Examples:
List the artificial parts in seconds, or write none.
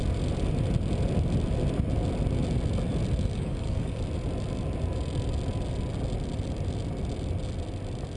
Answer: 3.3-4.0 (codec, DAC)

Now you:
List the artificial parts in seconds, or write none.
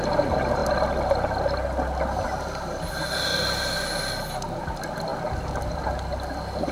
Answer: none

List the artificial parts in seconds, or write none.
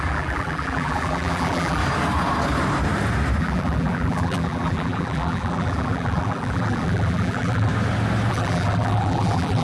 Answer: 0.0-1.8 (vocoder, BigVGAN v2); 3.4-7.7; 8.3-9.6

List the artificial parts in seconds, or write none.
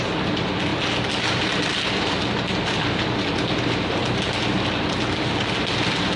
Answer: none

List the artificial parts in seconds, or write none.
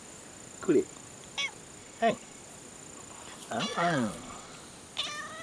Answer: 1.8-2.4 (vocoder, WaveNeXt); 3.7-4.6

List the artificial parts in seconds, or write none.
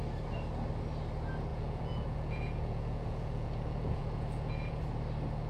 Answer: 1.5-4.8 (vocoder, Vocos)